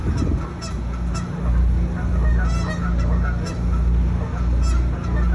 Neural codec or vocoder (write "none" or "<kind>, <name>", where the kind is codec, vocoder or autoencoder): none